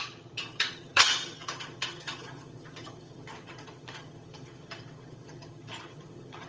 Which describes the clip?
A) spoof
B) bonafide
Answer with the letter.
A